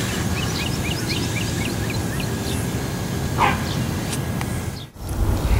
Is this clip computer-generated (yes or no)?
no